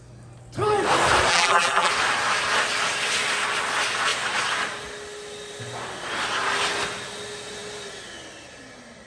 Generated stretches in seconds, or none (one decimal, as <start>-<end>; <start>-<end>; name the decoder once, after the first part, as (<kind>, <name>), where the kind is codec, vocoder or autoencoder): 1.3-1.9 (vocoder, BigVGAN v2)